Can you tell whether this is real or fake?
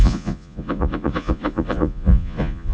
fake